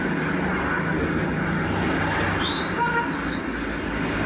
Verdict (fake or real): real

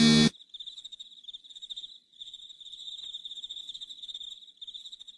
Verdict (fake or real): real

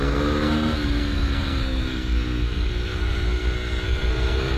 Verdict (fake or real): fake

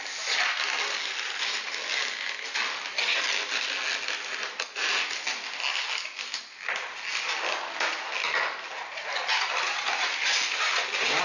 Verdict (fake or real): real